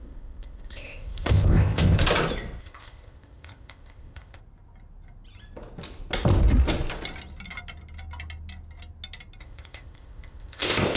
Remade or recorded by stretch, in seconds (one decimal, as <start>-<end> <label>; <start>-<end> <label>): 0.0-2.0 remade; 2.0-2.6 recorded; 2.6-4.4 remade; 4.4-9.4 recorded; 9.4-11.0 remade